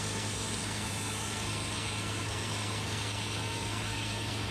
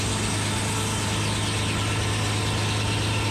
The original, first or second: second